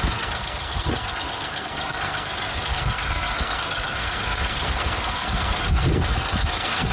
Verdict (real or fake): fake